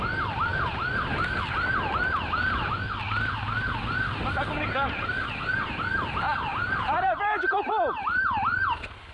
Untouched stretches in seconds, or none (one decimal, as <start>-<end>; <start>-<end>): 0.0-6.5; 7.7-9.1